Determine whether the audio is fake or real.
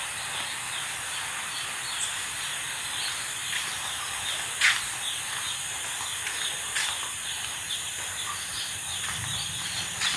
real